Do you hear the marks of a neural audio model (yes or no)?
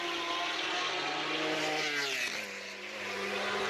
no